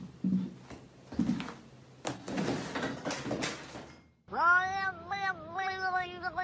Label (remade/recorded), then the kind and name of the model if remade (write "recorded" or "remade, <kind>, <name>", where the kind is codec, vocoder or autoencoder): recorded